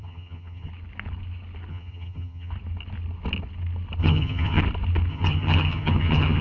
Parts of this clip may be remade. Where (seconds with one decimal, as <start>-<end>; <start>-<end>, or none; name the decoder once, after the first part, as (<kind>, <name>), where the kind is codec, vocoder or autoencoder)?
0.0-0.7 (vocoder, HiFi-GAN); 1.7-2.5; 4.0-4.6; 5.1-6.4